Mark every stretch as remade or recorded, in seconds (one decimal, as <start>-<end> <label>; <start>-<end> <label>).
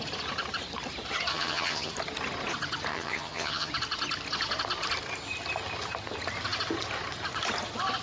0.0-1.3 recorded; 1.3-1.9 remade; 1.9-2.9 recorded; 2.9-3.7 remade; 3.7-8.0 recorded